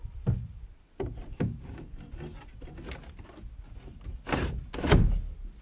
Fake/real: real